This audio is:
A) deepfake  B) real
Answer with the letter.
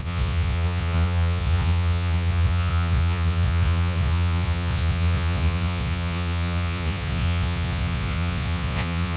A